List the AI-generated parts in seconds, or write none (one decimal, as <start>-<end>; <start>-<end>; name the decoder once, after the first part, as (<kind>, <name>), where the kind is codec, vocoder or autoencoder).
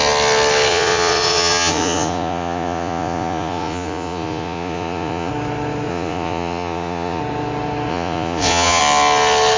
0.7-5.3 (vocoder, Vocos); 5.9-7.2; 7.9-8.8